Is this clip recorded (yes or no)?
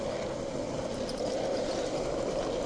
yes